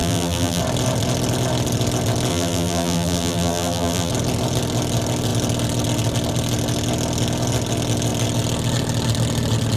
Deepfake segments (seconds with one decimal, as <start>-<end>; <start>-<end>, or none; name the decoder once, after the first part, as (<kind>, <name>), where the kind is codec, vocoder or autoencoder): 0.0-0.6 (vocoder, BigVGAN v2); 2.3-4.1